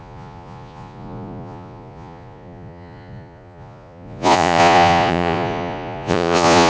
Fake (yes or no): yes